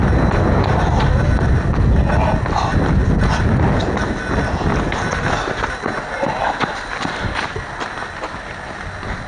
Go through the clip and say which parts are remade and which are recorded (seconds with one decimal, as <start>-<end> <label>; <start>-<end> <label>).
0.0-6.4 recorded; 6.4-7.2 remade; 7.2-9.3 recorded